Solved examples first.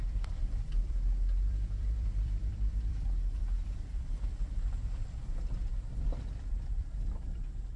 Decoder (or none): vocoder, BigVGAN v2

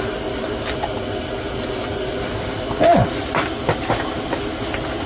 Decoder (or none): none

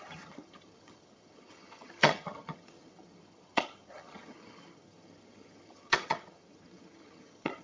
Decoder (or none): vocoder, HiFi-GAN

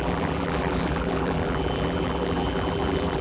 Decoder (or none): vocoder, BigVGAN v2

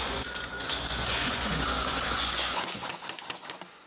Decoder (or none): vocoder, Vocos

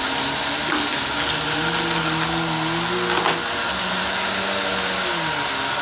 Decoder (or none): none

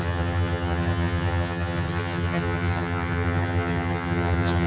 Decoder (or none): vocoder, HiFi-GAN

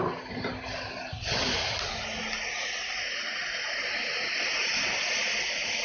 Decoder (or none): none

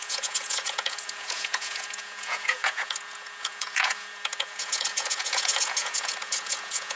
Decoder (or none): vocoder, Vocos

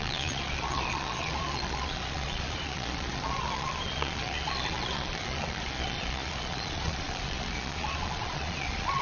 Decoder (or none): vocoder, Vocos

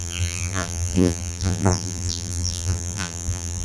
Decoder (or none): vocoder, BigVGAN v2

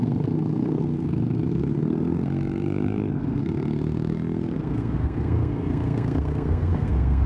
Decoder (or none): codec, SNAC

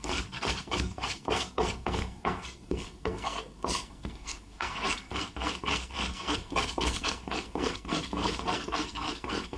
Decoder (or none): codec, SNAC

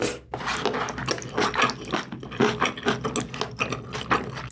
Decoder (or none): none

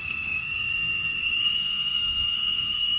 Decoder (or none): codec, SNAC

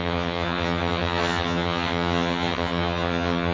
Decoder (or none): vocoder, HiFi-GAN